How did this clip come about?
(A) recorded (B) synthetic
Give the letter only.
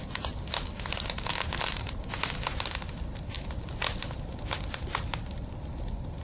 A